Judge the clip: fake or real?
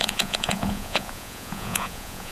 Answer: fake